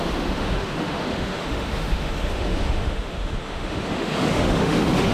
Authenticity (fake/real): fake